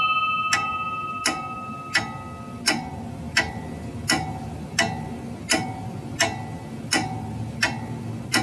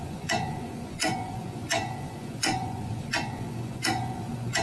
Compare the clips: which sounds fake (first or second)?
second